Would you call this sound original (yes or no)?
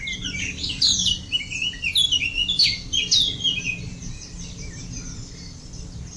yes